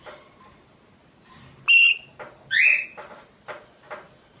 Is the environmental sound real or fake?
real